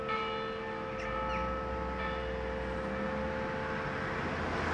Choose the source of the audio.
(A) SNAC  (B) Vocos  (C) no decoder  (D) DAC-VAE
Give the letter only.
C